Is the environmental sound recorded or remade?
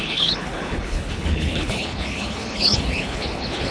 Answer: remade